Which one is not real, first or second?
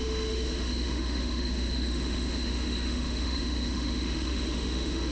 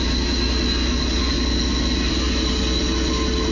first